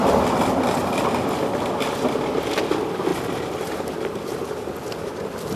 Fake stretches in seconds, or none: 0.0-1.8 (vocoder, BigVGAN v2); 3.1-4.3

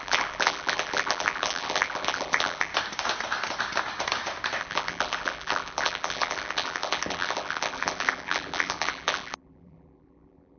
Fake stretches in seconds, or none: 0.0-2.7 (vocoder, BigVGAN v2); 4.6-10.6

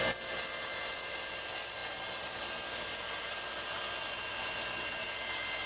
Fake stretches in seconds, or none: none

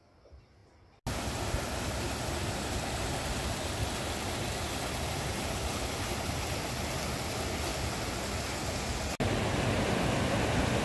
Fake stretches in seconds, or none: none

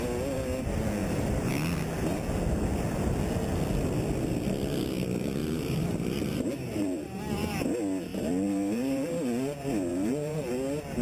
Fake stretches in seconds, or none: 1.0-1.5 (vocoder, BigVGAN v2); 5.4-7.2; 8.1-9.1; 9.9-10.5

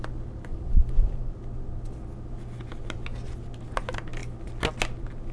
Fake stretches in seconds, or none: 0.5-1.3 (vocoder, BigVGAN v2)

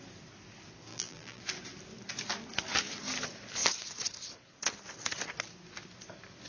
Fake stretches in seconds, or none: 0.9-1.4 (vocoder, BigVGAN v2)